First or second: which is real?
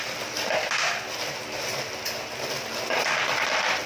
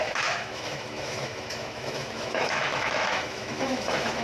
first